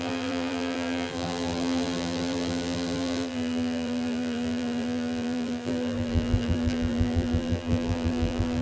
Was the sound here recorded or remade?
remade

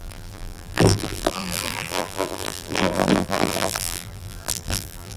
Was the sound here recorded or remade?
remade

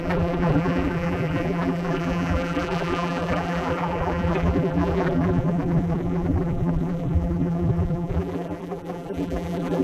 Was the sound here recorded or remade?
remade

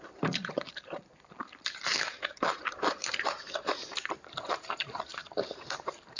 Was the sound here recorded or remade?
remade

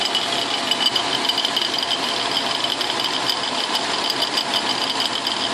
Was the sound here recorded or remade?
recorded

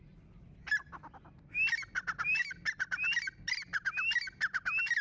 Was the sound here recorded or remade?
recorded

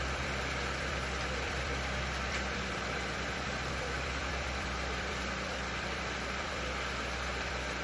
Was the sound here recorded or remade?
remade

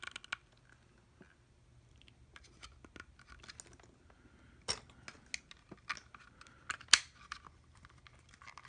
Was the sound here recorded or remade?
recorded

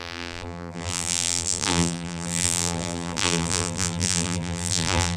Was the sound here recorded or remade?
remade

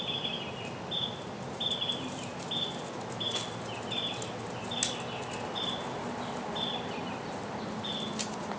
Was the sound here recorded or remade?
recorded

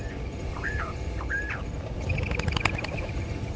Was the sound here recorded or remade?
remade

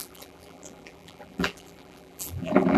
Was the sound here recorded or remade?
remade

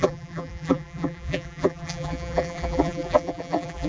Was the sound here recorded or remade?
remade